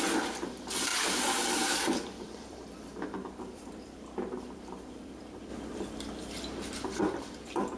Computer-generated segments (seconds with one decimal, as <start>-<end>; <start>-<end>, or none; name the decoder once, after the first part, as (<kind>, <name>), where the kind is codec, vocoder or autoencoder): 0.0-0.9 (vocoder, BigVGAN v2); 1.6-5.5; 7.0-7.8